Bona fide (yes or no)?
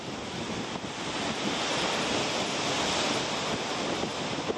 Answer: yes